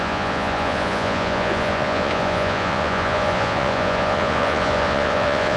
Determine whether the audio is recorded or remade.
remade